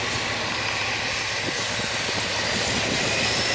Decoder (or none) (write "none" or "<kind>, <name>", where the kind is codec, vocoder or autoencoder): none